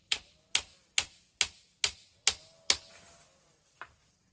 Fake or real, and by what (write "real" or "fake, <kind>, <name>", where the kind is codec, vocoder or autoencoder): real